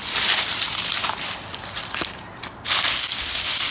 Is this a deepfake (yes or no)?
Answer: no